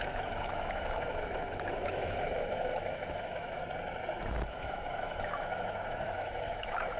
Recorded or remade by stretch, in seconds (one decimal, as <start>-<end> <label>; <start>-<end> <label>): 0.0-3.6 remade; 3.6-4.3 recorded; 4.3-7.0 remade

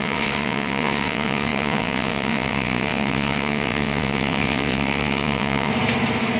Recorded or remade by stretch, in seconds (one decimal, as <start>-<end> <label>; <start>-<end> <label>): 0.0-5.7 remade; 5.7-6.4 recorded

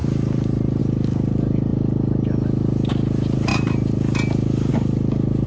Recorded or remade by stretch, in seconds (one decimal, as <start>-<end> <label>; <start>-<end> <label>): 0.0-0.8 remade; 0.8-3.5 recorded; 3.5-4.7 remade; 4.7-5.5 recorded

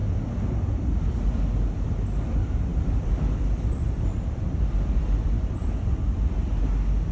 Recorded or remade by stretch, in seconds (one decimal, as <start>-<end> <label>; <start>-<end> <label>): 0.0-2.7 recorded; 2.7-6.6 remade; 6.6-7.1 recorded

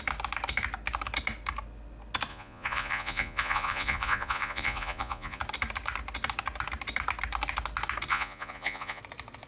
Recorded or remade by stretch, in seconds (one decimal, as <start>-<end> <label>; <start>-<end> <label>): 0.0-2.3 recorded; 2.3-5.4 remade; 5.4-8.1 recorded; 8.1-9.0 remade; 9.0-9.5 recorded

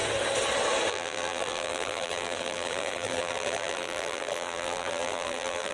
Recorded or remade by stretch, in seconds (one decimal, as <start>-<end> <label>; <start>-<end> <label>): 0.0-0.9 recorded; 0.9-5.7 remade

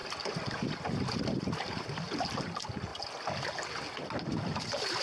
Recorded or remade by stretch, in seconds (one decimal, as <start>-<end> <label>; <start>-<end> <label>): 0.0-1.2 recorded; 1.2-2.9 remade; 2.9-4.6 recorded; 4.6-5.0 remade